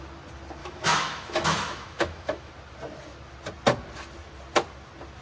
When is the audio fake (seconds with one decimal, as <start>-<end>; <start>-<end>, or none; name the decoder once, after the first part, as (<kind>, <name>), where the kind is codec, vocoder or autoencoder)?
0.6-2.5 (autoencoder, DAC-VAE)